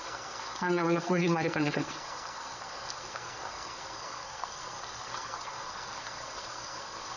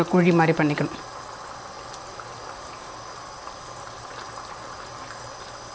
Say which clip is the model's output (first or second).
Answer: first